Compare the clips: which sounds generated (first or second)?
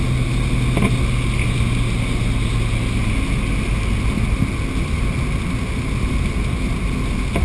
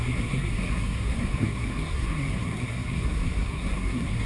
second